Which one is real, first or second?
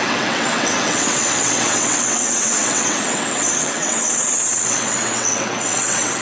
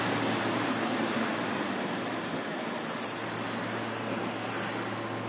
second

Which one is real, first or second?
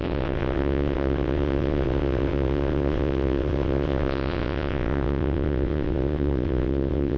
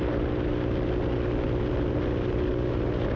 second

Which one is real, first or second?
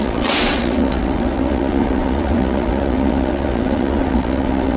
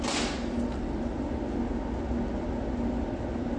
second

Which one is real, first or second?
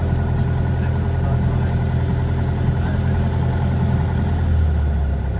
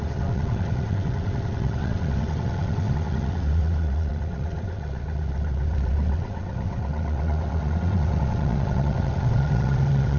first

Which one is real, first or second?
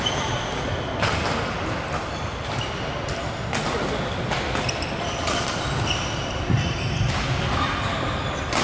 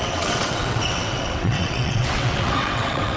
first